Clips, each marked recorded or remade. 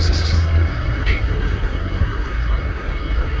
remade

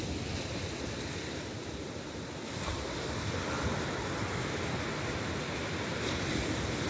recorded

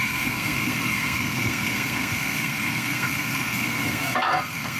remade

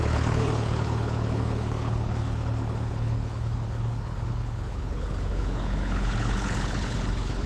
remade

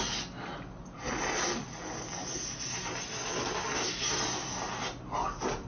recorded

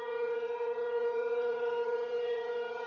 remade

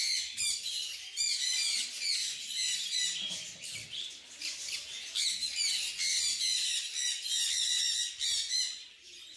recorded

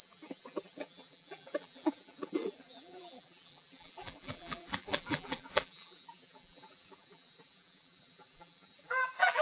remade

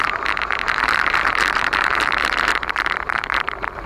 remade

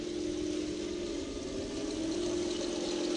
recorded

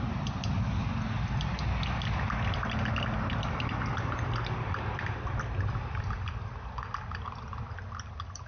recorded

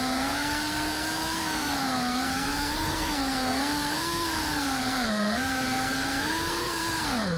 remade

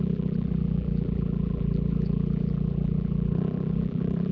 remade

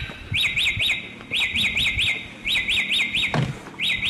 recorded